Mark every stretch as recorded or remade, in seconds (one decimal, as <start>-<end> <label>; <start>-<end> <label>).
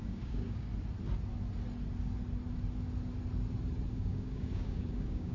0.0-0.7 remade; 0.7-3.9 recorded; 3.9-5.3 remade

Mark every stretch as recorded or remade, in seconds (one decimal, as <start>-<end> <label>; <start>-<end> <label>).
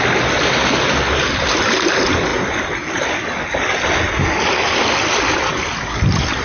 0.0-6.4 recorded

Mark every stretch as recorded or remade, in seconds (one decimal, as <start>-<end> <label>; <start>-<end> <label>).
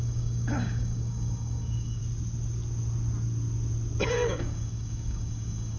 0.0-2.0 remade; 2.0-4.1 recorded; 4.1-5.8 remade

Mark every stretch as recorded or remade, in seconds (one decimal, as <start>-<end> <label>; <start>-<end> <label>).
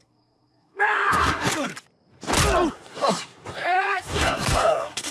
0.0-1.7 remade; 1.7-2.7 recorded; 2.7-5.1 remade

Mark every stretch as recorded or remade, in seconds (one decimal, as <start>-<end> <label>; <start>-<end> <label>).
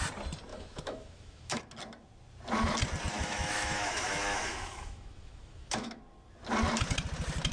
0.0-0.5 recorded; 0.5-1.6 remade; 1.6-3.1 recorded; 3.1-6.0 remade; 6.0-7.5 recorded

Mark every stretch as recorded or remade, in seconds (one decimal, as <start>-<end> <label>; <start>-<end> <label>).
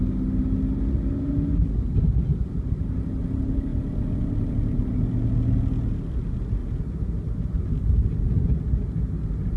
0.0-9.6 recorded